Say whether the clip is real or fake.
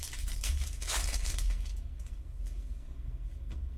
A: fake